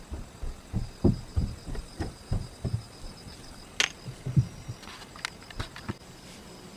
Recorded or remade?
recorded